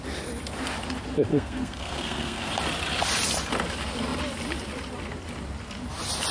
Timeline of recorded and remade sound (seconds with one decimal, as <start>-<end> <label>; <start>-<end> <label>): 0.0-1.3 recorded; 1.3-2.5 remade; 2.5-6.3 recorded